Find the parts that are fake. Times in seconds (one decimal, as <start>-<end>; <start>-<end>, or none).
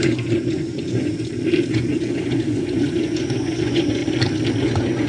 0.0-1.1; 1.7-4.0; 4.6-5.1